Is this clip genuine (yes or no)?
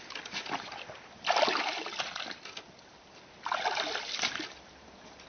yes